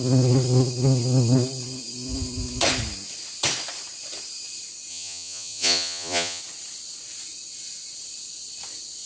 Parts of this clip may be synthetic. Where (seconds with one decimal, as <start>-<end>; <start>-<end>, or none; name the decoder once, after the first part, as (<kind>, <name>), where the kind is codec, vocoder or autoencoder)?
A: 4.9-6.4 (vocoder, Vocos)